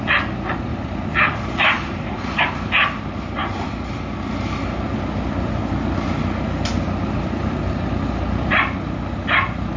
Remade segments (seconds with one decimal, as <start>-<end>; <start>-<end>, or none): 0.7-2.4